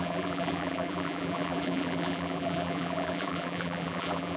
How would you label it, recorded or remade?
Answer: remade